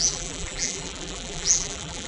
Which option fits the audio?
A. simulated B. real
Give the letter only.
A